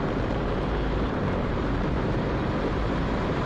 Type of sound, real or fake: fake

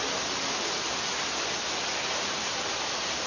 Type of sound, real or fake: real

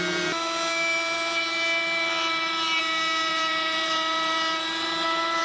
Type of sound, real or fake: fake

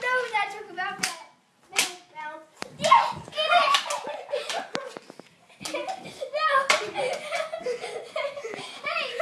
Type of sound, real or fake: real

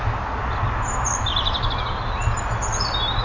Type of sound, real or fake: real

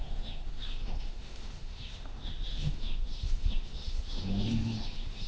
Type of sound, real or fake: fake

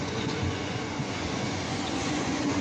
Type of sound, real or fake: fake